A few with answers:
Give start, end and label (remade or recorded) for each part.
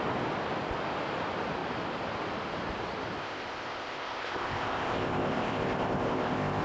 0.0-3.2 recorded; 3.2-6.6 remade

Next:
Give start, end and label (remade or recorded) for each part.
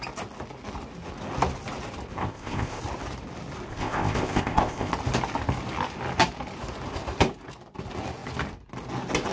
0.0-2.2 recorded; 2.2-2.8 remade; 2.8-3.7 recorded; 3.7-4.9 remade; 4.9-9.3 recorded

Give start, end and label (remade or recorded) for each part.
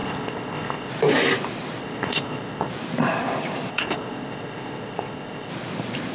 0.0-0.9 remade; 0.9-1.8 recorded; 1.8-2.7 remade; 2.7-3.7 recorded; 3.7-5.5 remade; 5.5-6.1 recorded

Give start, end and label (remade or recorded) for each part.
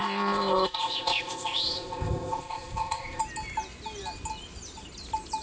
0.0-3.2 remade; 3.2-5.4 recorded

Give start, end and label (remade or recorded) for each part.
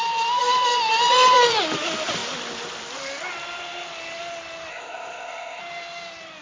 0.0-4.7 recorded; 4.7-5.6 remade; 5.6-6.4 recorded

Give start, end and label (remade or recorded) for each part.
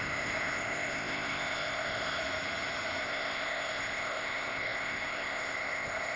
0.0-2.2 remade; 2.2-3.0 recorded; 3.0-6.2 remade